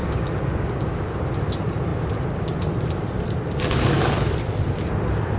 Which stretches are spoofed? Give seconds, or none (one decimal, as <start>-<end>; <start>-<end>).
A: 0.0-1.2